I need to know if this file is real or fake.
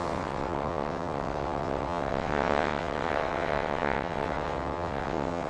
fake